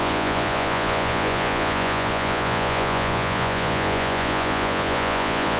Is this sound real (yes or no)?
no